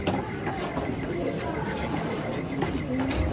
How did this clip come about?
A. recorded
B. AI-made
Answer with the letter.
A